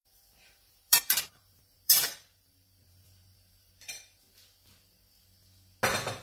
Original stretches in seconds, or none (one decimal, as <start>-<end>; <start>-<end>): 3.7-6.2